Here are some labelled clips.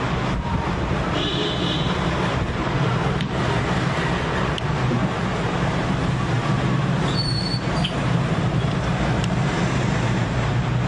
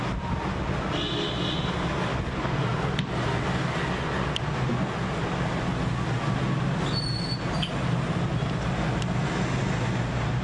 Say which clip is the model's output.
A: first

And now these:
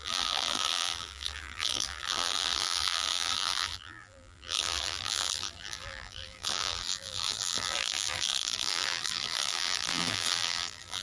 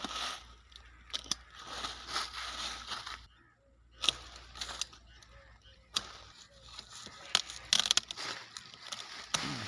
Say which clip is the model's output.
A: first